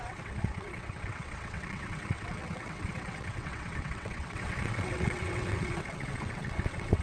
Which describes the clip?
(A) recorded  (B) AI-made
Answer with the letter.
B